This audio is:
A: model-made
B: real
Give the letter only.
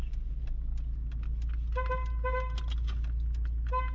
B